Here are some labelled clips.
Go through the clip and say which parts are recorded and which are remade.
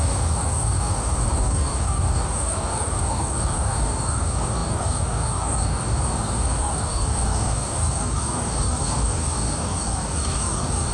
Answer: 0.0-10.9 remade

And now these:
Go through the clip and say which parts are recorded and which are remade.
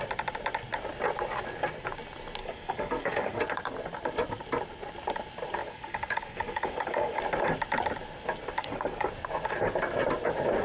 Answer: 0.0-2.4 recorded; 2.4-3.4 remade; 3.4-5.6 recorded; 5.6-7.2 remade; 7.2-8.6 recorded; 8.6-9.1 remade; 9.1-10.6 recorded